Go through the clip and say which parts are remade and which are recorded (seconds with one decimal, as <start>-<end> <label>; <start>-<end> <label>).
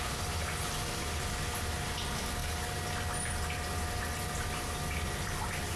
0.0-5.8 recorded